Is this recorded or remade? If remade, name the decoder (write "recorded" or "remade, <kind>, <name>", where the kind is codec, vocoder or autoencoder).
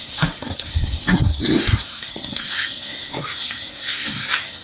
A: remade, codec, SNAC